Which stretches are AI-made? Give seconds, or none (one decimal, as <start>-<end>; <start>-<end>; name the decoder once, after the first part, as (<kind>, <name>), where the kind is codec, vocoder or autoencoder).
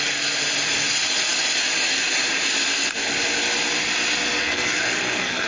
4.4-5.5 (codec, SNAC)